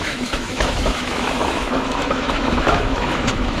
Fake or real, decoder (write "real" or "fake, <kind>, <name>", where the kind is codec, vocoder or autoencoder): fake, autoencoder, DAC-VAE